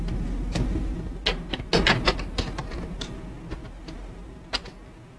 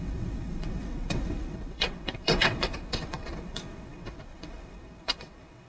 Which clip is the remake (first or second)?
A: second